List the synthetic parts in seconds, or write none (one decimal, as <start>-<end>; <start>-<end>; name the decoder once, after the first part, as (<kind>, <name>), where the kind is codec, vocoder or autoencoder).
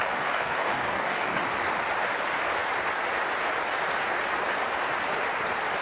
0.0-1.4 (codec, DAC)